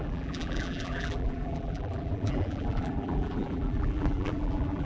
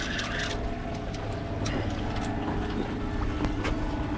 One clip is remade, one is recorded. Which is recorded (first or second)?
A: second